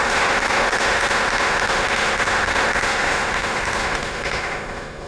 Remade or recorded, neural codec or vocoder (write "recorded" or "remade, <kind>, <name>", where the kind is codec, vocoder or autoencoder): remade, autoencoder, DAC-VAE